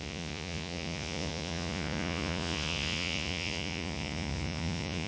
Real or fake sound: fake